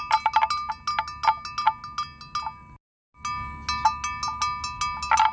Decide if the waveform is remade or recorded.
recorded